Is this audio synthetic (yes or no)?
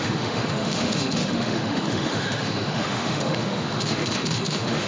yes